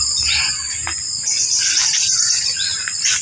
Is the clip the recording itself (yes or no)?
yes